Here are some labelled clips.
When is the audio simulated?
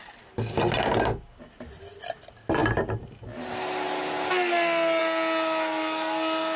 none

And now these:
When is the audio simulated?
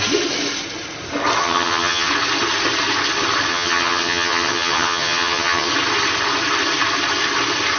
1.4-2.1 (vocoder, HiFi-GAN); 3.5-5.7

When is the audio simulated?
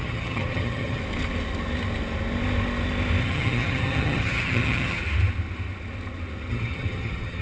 0.0-1.0 (vocoder, HiFi-GAN); 3.2-5.0; 6.5-7.4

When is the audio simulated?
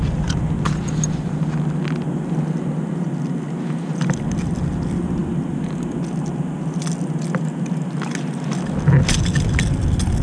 none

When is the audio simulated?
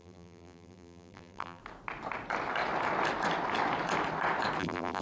0.0-1.6 (vocoder, BigVGAN v2); 4.6-5.0